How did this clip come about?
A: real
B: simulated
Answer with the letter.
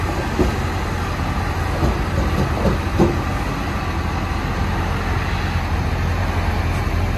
A